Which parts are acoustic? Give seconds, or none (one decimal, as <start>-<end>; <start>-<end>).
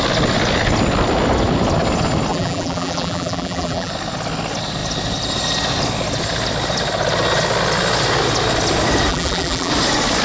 0.0-2.3; 3.9-9.1; 9.7-10.2